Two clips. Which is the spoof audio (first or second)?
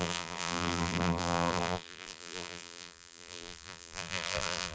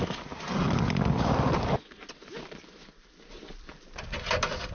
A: first